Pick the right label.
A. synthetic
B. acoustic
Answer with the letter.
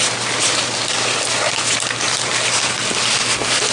B